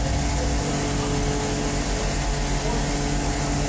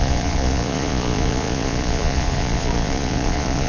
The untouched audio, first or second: first